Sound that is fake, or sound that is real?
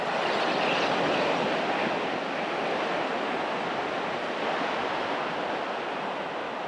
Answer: real